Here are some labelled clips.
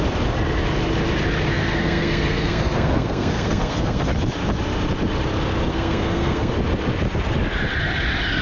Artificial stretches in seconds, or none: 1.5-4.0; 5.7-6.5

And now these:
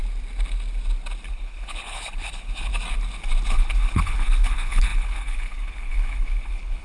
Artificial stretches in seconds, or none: 1.3-2.7; 3.5-6.8

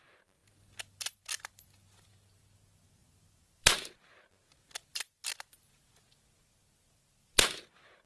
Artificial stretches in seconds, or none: 0.4-1.7; 3.0-4.1; 4.9-5.5

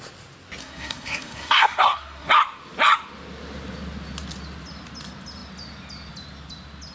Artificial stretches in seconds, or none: 0.6-2.3